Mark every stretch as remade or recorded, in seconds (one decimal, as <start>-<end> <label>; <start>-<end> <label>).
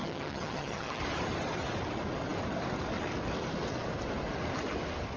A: 0.0-1.0 remade; 1.0-5.2 recorded